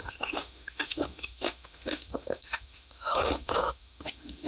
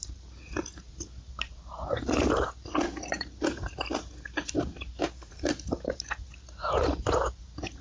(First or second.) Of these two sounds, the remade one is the first